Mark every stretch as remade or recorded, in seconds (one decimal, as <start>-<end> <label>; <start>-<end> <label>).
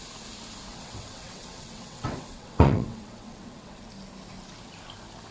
0.0-0.7 recorded; 0.7-3.7 remade; 3.7-5.3 recorded